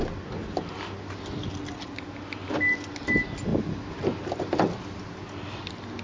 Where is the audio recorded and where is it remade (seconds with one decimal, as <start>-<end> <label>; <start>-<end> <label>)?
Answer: 0.0-6.0 recorded